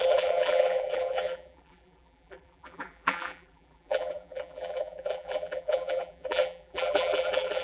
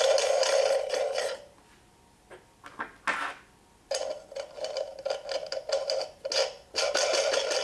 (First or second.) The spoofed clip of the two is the first